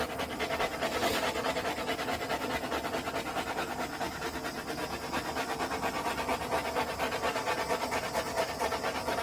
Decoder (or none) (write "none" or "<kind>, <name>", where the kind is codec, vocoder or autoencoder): none